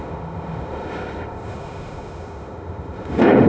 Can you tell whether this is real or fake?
fake